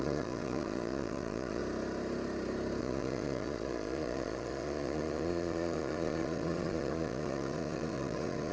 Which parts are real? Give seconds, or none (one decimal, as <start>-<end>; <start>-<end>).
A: 1.6-2.8